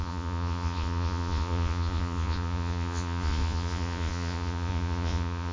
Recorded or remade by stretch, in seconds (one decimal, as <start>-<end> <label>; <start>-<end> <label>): 0.0-5.5 remade